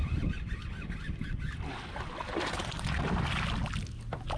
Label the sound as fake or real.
real